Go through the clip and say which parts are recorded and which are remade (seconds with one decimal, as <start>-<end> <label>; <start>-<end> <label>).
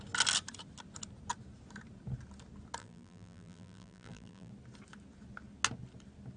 0.0-2.8 recorded; 2.8-4.5 remade; 4.5-6.4 recorded